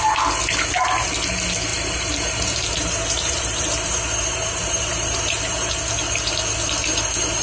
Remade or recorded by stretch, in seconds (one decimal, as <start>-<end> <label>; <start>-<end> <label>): 0.0-1.7 recorded; 1.7-5.9 remade; 5.9-7.4 recorded